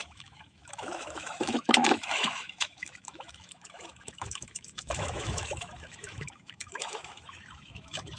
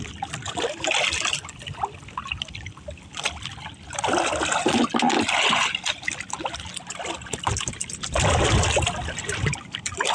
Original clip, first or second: second